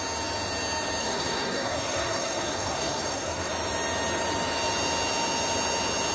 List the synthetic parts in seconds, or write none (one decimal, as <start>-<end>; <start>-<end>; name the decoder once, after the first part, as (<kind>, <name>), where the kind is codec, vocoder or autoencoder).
1.0-3.5 (codec, SNAC)